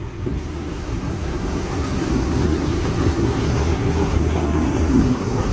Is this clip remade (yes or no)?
yes